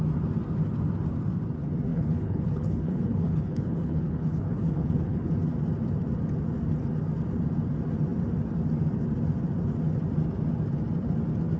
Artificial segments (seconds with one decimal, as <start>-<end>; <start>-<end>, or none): 1.9-5.3